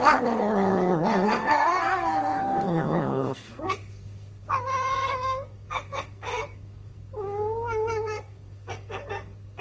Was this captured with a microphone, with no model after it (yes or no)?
no